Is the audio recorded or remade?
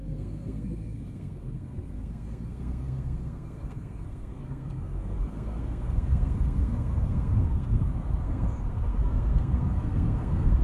remade